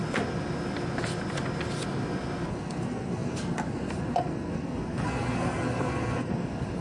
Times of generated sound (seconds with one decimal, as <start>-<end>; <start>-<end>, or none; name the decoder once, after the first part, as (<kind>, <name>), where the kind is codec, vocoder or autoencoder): 2.5-6.8 (codec, SNAC)